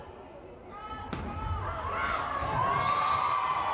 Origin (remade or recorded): recorded